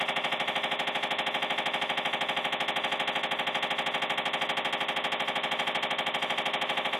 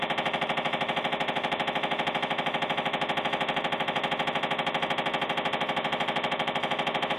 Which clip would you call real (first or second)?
first